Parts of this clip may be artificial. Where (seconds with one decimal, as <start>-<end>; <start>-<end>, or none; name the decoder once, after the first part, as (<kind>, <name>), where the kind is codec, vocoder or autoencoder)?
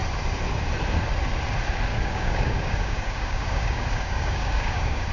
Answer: 1.9-5.1 (codec, DAC)